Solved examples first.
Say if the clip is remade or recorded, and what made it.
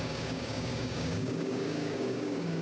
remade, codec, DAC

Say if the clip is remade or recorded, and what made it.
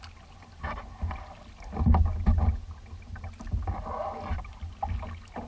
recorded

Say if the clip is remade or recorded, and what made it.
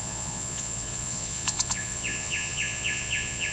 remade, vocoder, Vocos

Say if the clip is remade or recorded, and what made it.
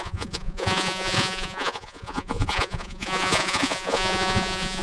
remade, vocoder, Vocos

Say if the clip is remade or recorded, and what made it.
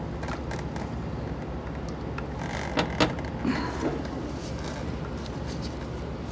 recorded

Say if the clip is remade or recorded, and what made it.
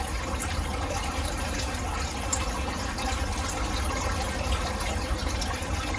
recorded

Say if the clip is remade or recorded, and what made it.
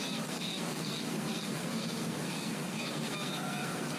remade, codec, SNAC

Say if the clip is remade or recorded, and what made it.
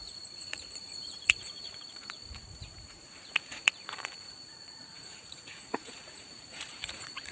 remade, vocoder, Vocos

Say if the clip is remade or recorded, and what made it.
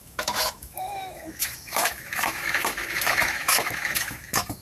remade, autoencoder, DAC-VAE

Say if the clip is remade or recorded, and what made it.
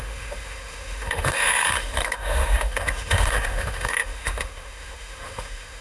remade, autoencoder, DAC-VAE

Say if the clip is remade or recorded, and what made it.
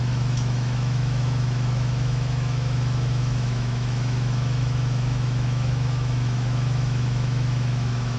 remade, autoencoder, DAC-VAE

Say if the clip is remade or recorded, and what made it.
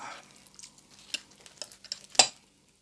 recorded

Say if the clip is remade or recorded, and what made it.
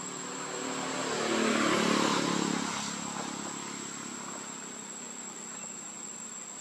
recorded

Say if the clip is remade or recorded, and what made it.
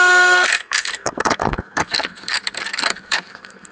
remade, codec, SNAC